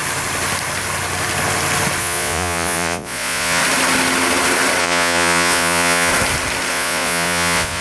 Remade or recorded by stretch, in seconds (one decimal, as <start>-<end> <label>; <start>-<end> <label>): 0.0-2.0 recorded; 2.0-3.6 remade; 3.6-4.8 recorded; 4.8-6.1 remade; 6.1-6.7 recorded; 6.7-7.8 remade